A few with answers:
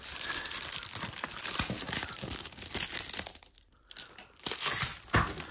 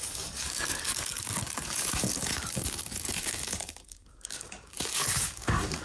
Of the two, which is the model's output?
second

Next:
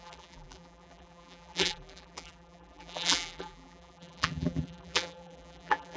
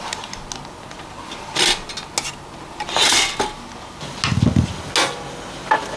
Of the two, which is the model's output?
first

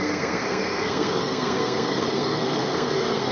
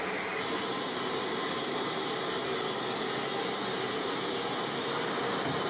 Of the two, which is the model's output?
first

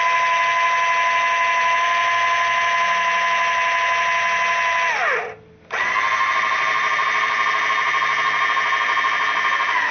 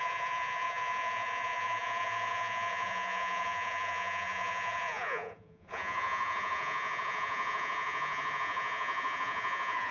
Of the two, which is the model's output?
second